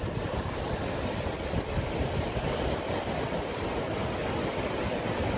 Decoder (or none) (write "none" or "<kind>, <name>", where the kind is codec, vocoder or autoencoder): none